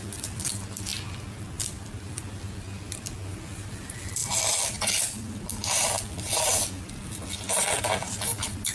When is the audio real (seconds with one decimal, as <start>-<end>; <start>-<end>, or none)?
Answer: 0.9-1.7